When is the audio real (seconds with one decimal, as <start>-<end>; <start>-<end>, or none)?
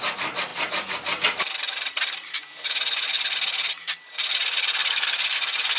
0.0-5.8